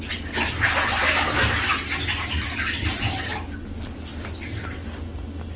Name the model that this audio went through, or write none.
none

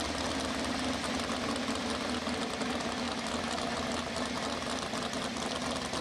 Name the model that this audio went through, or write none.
none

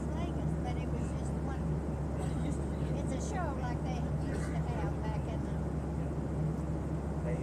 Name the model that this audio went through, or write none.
none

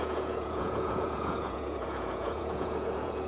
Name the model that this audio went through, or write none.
vocoder, Vocos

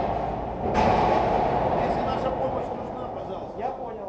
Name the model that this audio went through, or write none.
none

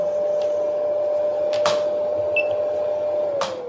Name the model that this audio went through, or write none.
none